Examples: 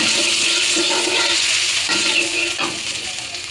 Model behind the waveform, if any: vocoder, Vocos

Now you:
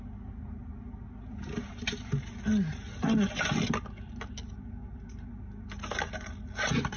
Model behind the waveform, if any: none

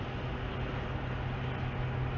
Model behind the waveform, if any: none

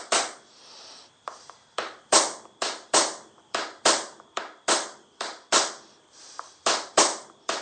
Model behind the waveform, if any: vocoder, BigVGAN v2